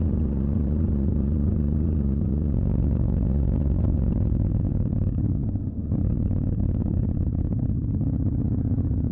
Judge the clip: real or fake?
fake